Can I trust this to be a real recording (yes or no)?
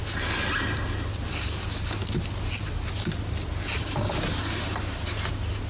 yes